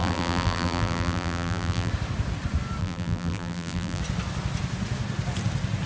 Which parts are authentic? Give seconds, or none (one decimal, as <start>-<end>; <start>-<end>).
1.9-2.8; 4.0-5.9